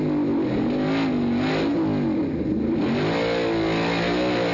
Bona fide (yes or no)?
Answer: yes